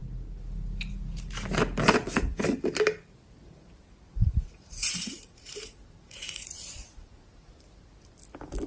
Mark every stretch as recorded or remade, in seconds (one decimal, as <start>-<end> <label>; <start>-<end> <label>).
0.0-4.2 recorded; 4.2-7.5 remade; 7.5-8.7 recorded